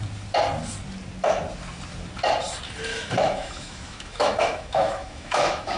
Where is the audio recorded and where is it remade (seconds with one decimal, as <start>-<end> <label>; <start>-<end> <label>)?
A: 0.0-2.9 recorded; 2.9-5.8 remade